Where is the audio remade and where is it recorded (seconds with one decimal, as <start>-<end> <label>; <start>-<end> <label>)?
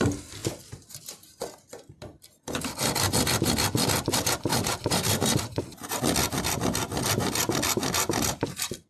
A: 0.0-4.5 recorded; 4.5-6.0 remade; 6.0-8.9 recorded